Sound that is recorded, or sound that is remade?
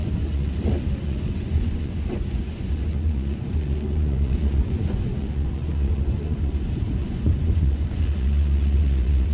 remade